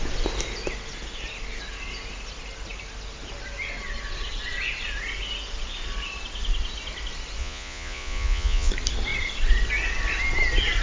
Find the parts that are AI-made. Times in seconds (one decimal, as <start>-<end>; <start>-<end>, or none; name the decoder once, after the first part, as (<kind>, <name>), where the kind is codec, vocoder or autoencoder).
7.4-8.7 (vocoder, Vocos)